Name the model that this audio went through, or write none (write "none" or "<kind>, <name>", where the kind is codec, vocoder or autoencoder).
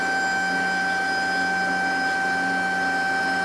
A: none